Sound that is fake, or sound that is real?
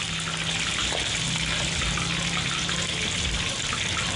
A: real